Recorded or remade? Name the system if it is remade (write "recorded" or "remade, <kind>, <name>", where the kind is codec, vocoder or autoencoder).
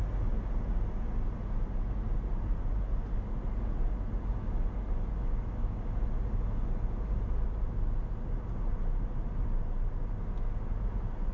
recorded